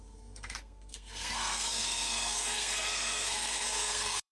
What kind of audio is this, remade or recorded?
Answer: remade